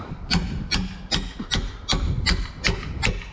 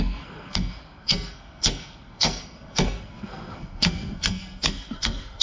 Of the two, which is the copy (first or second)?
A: second